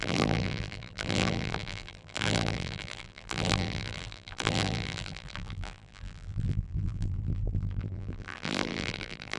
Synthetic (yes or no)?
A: yes